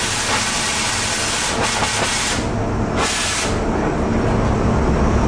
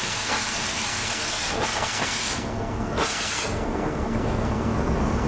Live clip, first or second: first